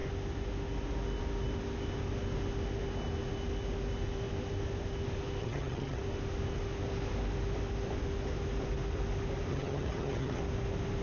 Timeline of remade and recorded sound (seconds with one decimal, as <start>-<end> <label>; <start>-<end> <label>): 0.0-5.4 recorded; 5.4-6.0 remade; 6.0-9.5 recorded; 9.5-10.4 remade; 10.4-11.0 recorded